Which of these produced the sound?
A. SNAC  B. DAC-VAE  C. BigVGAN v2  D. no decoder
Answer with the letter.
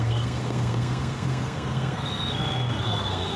A